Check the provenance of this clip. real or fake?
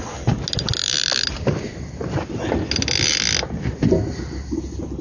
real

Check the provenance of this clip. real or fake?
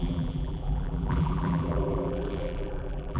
fake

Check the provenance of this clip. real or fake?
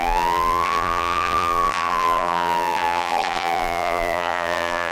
fake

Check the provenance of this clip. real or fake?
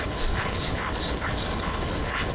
fake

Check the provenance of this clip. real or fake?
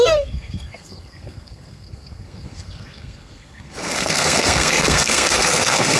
fake